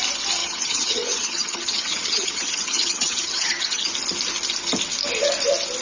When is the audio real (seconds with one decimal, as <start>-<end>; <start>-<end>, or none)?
0.0-0.4; 3.9-5.8